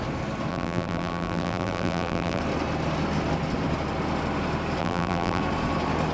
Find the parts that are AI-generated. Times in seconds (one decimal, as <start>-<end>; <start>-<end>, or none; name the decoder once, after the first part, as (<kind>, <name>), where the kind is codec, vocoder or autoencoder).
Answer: 0.5-2.4 (vocoder, BigVGAN v2); 4.8-5.4